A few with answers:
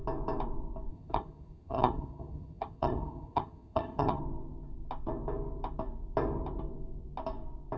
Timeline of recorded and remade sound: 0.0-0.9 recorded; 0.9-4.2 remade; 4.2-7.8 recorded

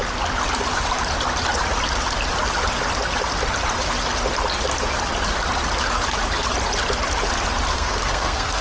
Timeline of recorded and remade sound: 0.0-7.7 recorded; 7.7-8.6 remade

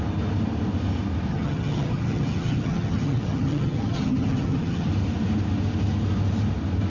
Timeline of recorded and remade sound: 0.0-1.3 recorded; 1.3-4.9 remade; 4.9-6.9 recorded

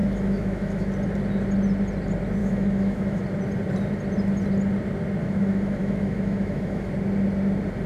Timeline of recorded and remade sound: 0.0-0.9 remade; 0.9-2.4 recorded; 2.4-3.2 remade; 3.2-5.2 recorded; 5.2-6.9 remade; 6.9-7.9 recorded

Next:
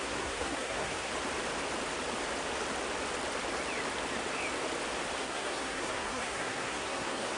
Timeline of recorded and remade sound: 0.0-1.1 remade; 1.1-5.2 recorded; 5.2-7.4 remade

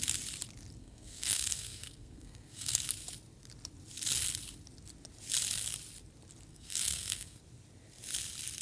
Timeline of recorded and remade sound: 0.0-0.8 recorded; 0.8-2.8 remade; 2.8-6.5 recorded; 6.5-7.4 remade; 7.4-8.6 recorded

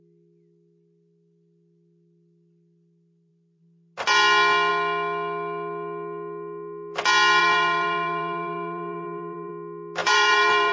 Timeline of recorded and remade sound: 0.0-7.4 recorded; 7.4-9.5 remade; 9.5-10.0 recorded; 10.0-10.7 remade

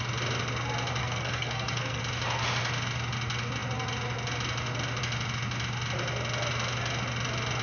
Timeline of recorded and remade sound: 0.0-1.0 recorded; 1.0-2.0 remade; 2.0-7.6 recorded